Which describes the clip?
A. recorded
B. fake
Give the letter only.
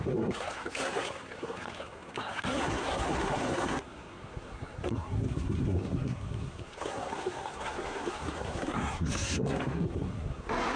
B